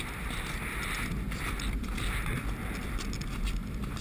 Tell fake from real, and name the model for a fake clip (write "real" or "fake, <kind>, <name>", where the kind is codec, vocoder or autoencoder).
real